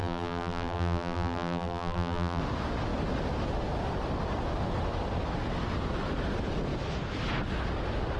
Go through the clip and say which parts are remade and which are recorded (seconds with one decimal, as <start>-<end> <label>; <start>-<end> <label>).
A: 0.0-2.4 remade; 2.4-8.2 recorded